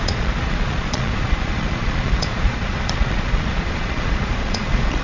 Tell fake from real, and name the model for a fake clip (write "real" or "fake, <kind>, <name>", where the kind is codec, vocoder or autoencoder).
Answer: fake, vocoder, Vocos